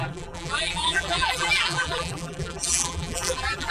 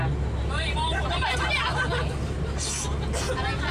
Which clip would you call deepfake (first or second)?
first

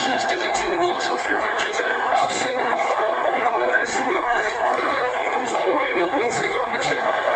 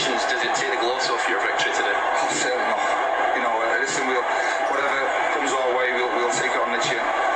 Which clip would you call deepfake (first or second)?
first